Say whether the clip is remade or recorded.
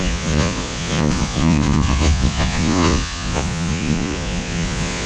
remade